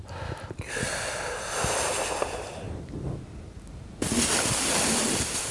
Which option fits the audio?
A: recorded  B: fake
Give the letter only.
A